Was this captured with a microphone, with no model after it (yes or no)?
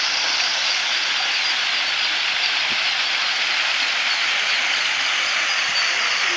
yes